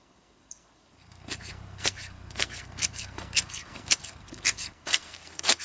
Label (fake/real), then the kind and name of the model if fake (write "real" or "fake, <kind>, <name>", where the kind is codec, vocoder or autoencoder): fake, codec, SNAC